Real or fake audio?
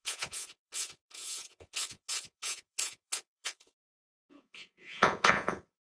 fake